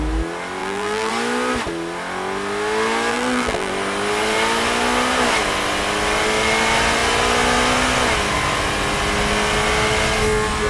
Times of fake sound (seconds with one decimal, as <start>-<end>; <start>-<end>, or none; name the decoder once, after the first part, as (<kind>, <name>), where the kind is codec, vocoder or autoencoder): 0.6-1.1 (vocoder, BigVGAN v2); 3.1-3.7